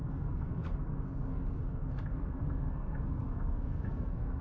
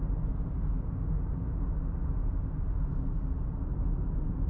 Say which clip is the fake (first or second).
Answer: first